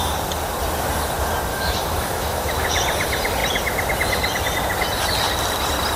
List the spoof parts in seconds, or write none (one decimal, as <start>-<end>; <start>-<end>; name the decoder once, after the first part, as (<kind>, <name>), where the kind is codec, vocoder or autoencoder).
1.5-2.7 (autoencoder, DAC-VAE)